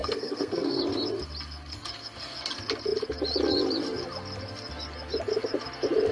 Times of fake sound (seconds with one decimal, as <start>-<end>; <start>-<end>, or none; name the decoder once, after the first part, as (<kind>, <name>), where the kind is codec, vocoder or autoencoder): 0.0-0.8 (codec, SNAC)